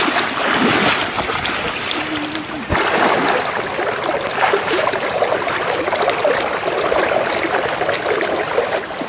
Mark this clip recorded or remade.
remade